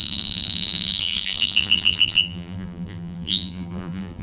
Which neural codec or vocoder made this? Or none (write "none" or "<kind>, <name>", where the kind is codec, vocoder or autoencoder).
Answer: vocoder, BigVGAN v2